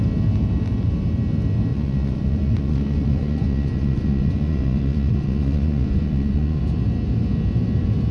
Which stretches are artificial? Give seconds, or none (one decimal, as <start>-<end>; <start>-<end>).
1.7-6.6